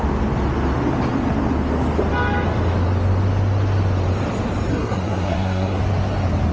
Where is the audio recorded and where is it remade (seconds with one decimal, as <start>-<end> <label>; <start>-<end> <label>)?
0.0-4.7 recorded; 4.7-5.8 remade; 5.8-6.5 recorded